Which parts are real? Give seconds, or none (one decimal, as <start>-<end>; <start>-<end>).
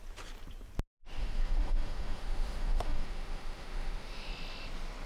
0.0-1.2; 4.3-5.1